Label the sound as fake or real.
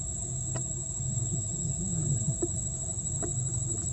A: real